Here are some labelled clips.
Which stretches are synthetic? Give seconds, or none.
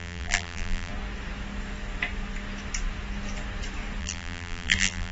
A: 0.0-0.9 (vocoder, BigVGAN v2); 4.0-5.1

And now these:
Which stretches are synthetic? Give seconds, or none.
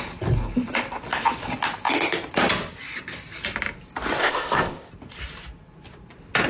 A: 4.2-4.9 (codec, ZipCodec)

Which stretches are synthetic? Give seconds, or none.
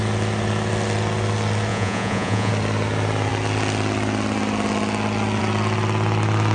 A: 1.7-2.5 (vocoder, Vocos)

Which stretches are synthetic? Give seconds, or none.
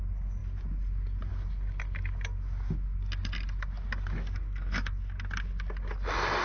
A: none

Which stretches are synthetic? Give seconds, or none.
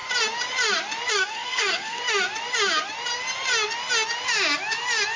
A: 1.1-2.0 (codec, SNAC)